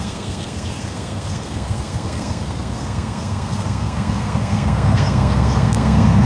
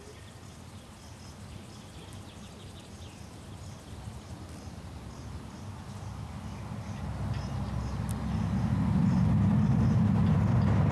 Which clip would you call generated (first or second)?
first